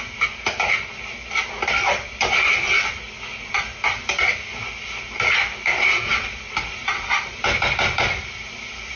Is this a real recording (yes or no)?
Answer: yes